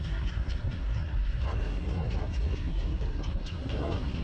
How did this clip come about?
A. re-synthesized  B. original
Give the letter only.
A